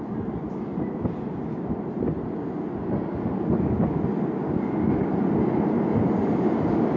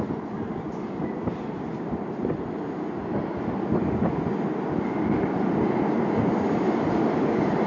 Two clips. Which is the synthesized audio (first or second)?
second